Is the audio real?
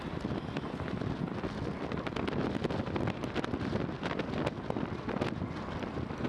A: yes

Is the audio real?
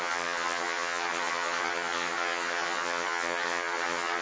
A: no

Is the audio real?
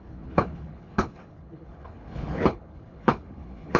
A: no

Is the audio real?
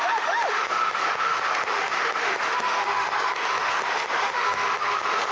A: no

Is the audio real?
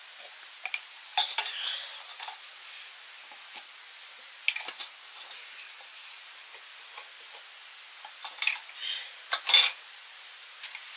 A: yes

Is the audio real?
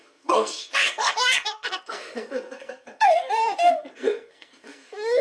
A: no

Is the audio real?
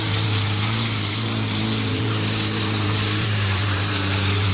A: no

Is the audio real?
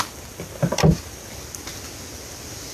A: yes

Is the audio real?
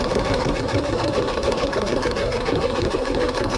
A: no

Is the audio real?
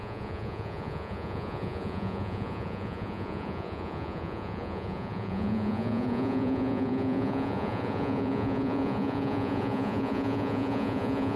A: no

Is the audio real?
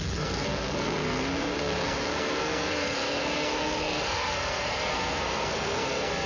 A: no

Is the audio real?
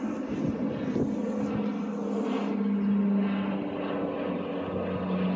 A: yes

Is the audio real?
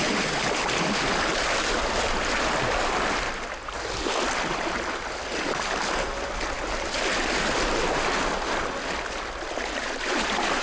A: yes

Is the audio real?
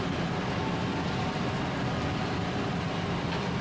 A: yes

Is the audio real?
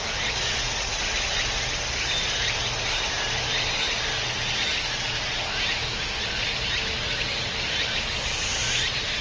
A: yes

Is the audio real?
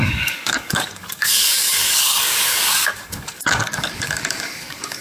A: no